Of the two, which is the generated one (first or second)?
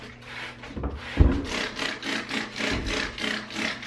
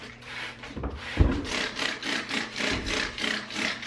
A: second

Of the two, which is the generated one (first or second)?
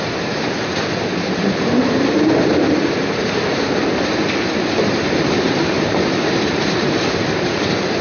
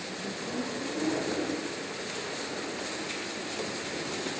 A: first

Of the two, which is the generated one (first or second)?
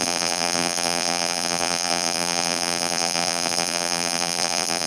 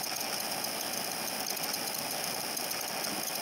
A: first